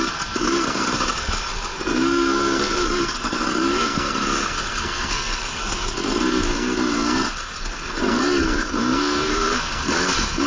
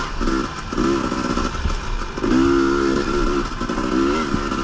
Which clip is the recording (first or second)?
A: second